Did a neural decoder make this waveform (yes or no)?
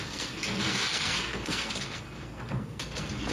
yes